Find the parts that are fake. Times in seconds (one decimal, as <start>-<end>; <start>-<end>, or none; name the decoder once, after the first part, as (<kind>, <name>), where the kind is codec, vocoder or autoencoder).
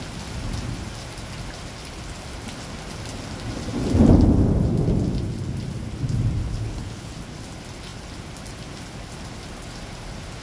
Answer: 6.4-7.1 (codec, HILCodec)